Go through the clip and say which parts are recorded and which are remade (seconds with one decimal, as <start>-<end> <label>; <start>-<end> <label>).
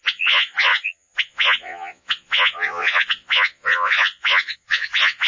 0.0-5.3 remade